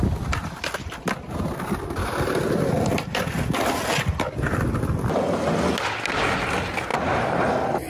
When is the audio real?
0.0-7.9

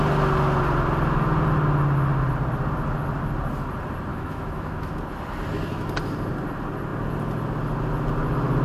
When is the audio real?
0.0-4.1; 4.9-8.6

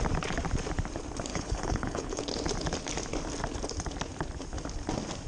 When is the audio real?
0.0-1.3; 2.2-5.3